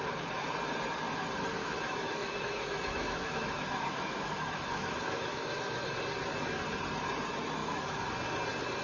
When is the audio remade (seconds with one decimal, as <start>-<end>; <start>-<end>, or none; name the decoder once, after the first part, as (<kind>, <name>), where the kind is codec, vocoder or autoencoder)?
1.6-5.9 (autoencoder, DAC-VAE); 7.6-8.1